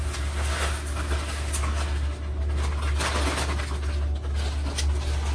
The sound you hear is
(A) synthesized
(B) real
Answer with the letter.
B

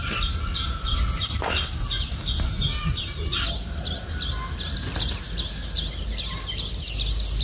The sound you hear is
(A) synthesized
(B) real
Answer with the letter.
B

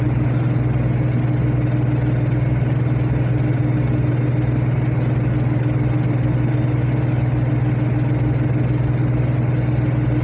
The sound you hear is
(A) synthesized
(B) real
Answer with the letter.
B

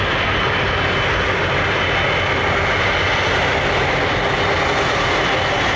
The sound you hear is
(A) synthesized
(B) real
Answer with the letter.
B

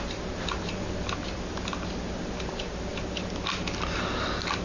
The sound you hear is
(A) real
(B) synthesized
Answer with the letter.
A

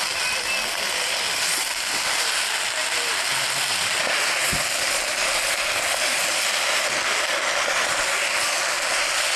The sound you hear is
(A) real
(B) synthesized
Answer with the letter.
A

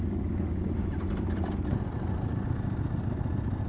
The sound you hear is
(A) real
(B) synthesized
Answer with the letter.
A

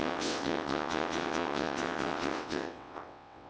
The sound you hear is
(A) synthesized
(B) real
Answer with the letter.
A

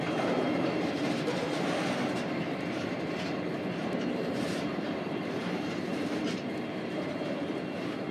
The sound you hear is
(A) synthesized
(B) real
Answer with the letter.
A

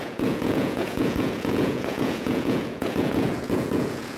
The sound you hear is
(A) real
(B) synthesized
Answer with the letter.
B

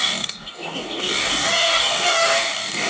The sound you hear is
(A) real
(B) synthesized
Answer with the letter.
B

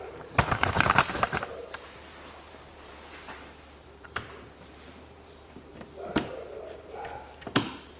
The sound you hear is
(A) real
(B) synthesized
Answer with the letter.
B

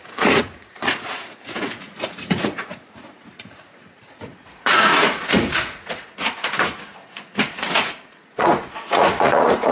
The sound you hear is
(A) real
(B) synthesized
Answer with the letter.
B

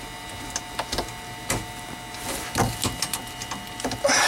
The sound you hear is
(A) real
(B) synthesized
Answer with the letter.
A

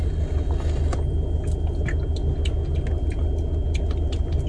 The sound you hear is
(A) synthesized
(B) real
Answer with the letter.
B